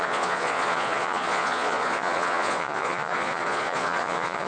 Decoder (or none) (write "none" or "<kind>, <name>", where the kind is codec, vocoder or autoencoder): vocoder, Vocos